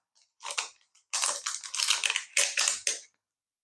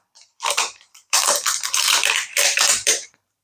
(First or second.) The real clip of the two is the first